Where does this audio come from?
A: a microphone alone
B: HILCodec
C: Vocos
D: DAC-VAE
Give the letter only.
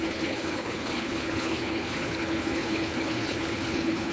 B